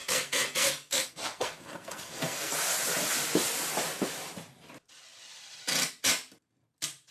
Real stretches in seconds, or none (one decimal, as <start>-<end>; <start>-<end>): 2.7-7.1